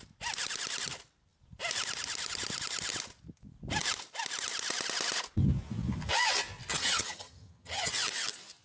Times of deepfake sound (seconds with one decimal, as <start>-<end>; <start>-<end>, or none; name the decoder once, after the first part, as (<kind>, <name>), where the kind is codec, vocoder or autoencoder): 6.7-7.9 (vocoder, HiFi-GAN)